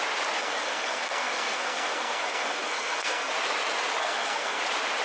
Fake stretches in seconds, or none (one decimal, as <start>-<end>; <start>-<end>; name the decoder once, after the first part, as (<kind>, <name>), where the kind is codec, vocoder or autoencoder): 0.4-3.3 (codec, SNAC); 4.0-4.6